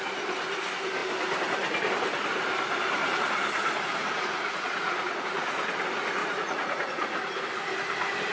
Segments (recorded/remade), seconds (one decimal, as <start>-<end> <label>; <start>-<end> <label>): 0.0-4.0 recorded; 4.0-5.6 remade; 5.6-6.2 recorded; 6.2-7.4 remade; 7.4-8.3 recorded